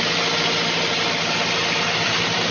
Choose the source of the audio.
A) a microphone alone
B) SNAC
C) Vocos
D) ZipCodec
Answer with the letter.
A